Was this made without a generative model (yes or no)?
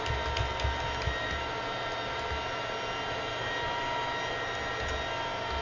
yes